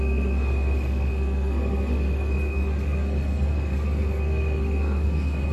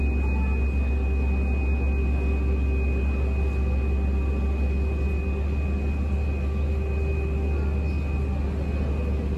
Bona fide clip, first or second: second